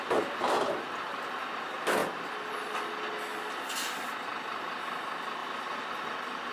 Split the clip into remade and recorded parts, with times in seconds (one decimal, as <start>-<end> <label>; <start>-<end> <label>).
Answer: 0.0-5.4 recorded; 5.4-5.9 remade; 5.9-6.5 recorded

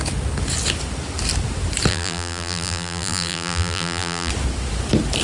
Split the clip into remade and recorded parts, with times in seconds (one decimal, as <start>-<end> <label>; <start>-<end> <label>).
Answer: 0.0-1.9 recorded; 1.9-4.3 remade; 4.3-5.2 recorded

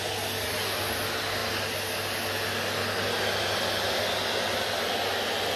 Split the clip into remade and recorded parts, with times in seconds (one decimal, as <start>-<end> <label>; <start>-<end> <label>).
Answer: 0.0-5.6 recorded

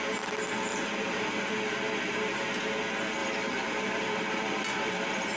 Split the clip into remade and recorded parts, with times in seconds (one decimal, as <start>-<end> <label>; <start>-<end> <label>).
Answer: 0.0-0.7 recorded; 0.7-1.5 remade; 1.5-3.2 recorded; 3.2-5.4 remade

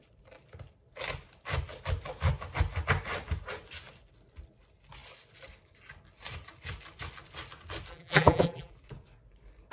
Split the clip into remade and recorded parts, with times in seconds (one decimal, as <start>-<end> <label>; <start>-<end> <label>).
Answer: 0.0-7.9 recorded; 7.9-8.7 remade; 8.7-9.7 recorded